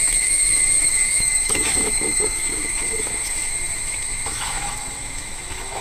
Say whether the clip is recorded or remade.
remade